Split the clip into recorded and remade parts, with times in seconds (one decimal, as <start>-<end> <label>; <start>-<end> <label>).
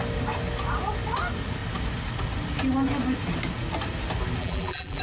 0.0-4.4 recorded; 4.4-5.0 remade